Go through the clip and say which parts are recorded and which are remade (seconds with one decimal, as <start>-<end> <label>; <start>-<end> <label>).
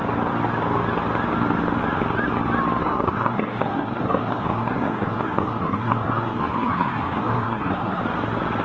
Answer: 0.0-2.8 recorded; 2.8-8.0 remade; 8.0-8.6 recorded